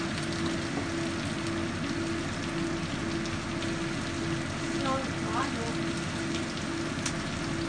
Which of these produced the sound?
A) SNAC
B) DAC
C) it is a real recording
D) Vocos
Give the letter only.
C